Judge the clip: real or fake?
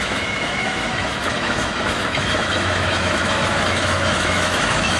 fake